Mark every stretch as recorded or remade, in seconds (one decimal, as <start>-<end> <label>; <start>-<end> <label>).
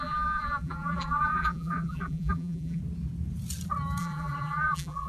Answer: 0.0-2.8 remade; 2.8-4.0 recorded; 4.0-5.1 remade